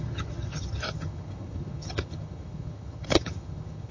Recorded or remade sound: remade